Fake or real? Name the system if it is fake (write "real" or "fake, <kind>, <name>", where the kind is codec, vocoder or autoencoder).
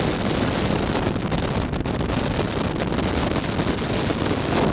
real